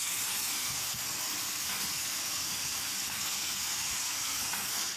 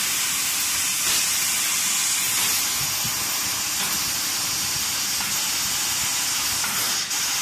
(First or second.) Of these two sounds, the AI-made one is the first